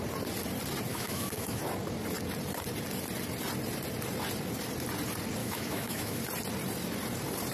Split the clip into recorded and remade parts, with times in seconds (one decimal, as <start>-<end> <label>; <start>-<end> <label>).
0.0-0.9 recorded; 0.9-1.6 remade; 1.6-5.4 recorded; 5.4-6.2 remade; 6.2-7.5 recorded